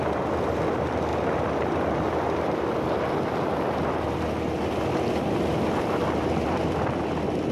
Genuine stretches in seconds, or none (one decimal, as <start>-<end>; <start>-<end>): none